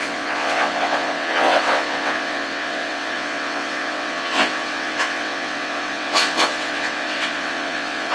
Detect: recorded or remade remade